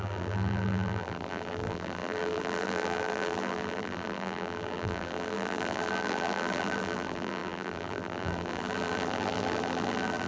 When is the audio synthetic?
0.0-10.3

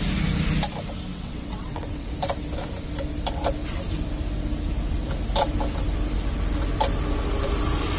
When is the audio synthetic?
1.1-2.1

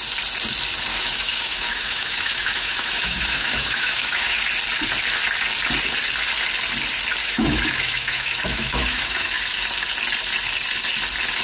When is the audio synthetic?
0.9-4.4; 7.2-9.4

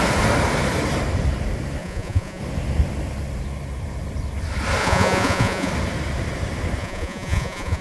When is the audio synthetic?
1.8-2.4; 4.8-5.7; 6.8-7.8

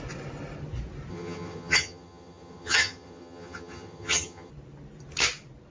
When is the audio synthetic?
1.1-4.5

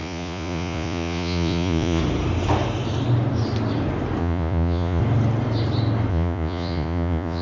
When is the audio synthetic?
0.0-2.0; 4.2-5.0; 6.1-7.4

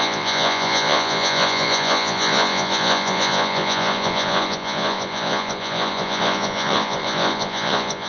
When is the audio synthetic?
0.0-8.1